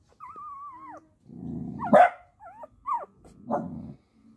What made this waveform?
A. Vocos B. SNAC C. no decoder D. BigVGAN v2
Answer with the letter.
C